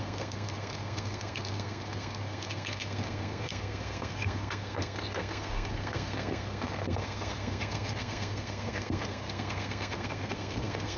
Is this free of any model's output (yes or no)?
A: no